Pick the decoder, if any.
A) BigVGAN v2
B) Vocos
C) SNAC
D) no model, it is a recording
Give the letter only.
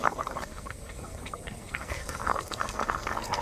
C